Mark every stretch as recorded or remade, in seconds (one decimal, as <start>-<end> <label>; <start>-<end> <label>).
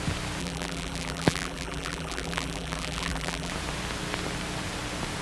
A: 0.0-0.4 recorded; 0.4-3.5 remade; 3.5-5.2 recorded